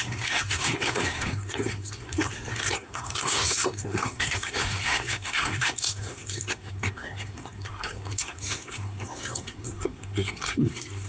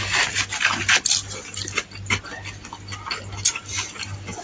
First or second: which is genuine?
second